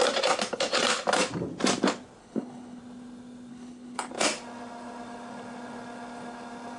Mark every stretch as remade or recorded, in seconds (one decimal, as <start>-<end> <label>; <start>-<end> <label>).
0.0-2.2 recorded; 2.2-2.8 remade; 2.8-3.5 recorded; 3.5-4.1 remade; 4.1-6.8 recorded